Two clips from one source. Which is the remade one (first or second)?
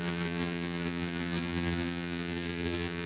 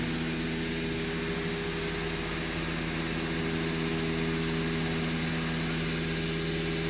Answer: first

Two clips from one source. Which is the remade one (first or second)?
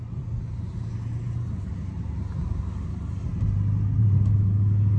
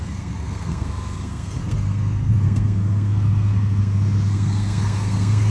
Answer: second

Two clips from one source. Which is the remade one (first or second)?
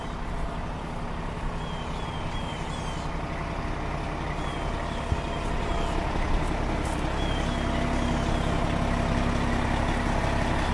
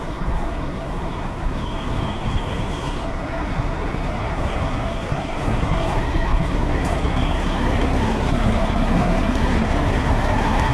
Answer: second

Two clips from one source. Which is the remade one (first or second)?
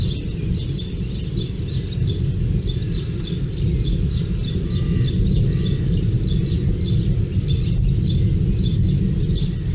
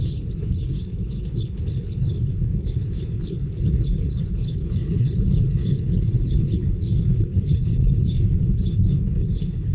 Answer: second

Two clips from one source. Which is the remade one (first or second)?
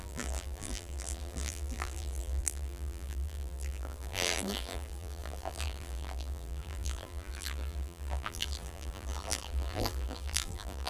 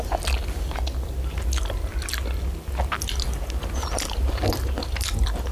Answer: first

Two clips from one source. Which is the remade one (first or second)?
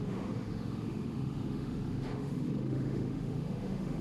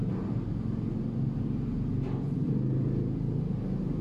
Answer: first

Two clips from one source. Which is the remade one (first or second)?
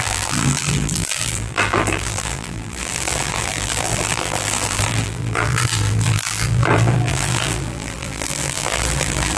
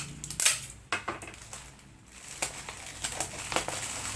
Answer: first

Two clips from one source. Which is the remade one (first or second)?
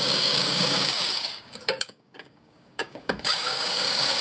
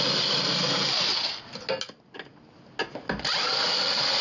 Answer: first